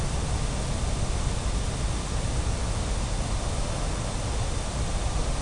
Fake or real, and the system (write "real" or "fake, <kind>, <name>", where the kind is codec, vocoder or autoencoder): real